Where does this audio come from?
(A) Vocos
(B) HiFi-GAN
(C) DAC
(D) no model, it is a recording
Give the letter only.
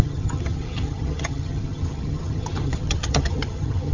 B